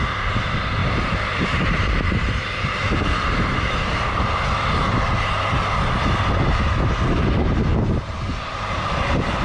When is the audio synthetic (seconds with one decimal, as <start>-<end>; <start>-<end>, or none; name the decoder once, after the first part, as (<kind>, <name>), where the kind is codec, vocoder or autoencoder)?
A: 0.8-4.2 (vocoder, BigVGAN v2); 7.7-8.7